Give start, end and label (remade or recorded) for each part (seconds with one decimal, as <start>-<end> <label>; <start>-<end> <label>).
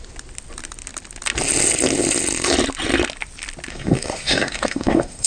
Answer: 0.0-3.7 recorded; 3.7-5.3 remade